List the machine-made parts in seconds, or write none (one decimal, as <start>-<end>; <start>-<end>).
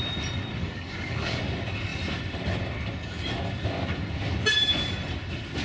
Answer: 0.6-1.4